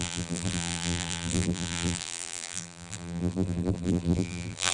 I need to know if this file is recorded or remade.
remade